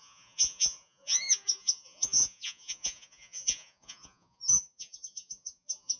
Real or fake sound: fake